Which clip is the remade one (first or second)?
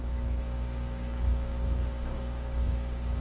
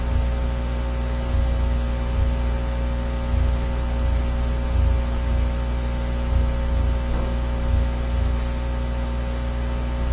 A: first